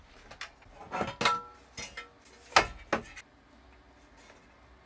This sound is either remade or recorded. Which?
recorded